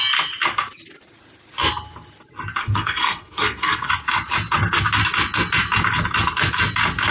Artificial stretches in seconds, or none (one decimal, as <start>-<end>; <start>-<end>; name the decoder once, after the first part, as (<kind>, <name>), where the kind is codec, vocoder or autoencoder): 2.6-3.9 (codec, SNAC)